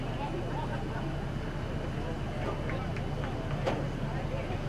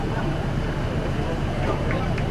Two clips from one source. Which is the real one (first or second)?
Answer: first